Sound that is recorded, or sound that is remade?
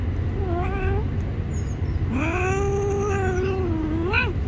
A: recorded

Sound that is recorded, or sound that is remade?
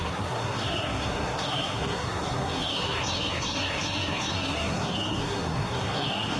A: remade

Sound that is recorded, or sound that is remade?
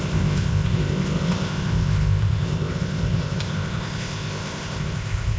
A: remade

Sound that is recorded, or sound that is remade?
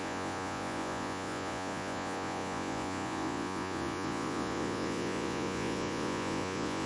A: remade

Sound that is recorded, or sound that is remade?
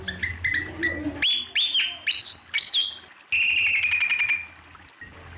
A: recorded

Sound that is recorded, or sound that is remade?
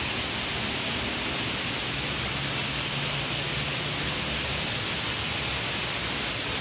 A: recorded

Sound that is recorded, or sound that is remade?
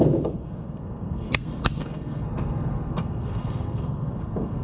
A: remade